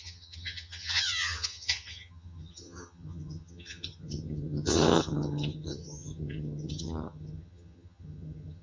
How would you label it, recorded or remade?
remade